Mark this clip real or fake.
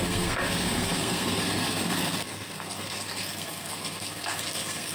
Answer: fake